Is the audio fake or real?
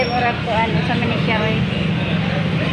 real